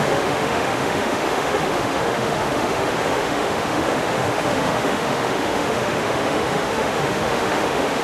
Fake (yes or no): yes